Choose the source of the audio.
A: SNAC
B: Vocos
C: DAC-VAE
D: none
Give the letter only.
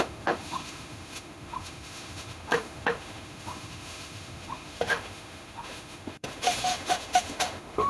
C